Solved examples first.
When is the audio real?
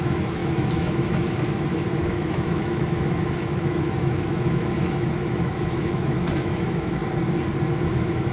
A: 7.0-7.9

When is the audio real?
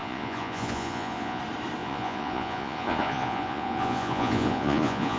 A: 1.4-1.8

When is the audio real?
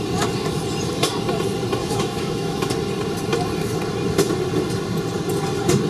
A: 0.0-1.8; 2.7-5.9